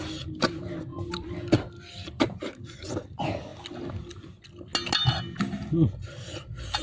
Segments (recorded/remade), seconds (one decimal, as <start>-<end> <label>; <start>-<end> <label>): 0.0-6.8 recorded